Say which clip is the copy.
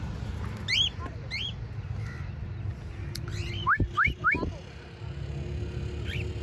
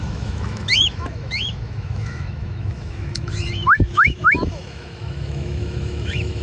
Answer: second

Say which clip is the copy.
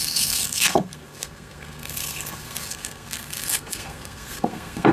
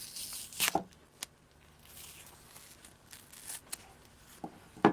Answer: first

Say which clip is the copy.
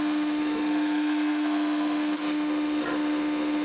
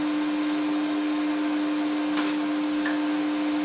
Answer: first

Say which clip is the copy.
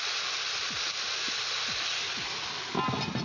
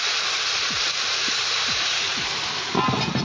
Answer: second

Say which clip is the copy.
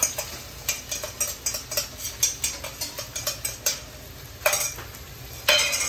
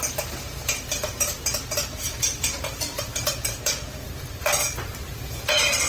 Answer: second